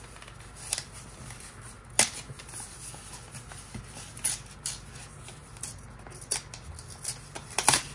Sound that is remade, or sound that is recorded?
recorded